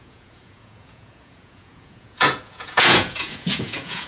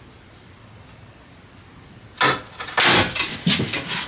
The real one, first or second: second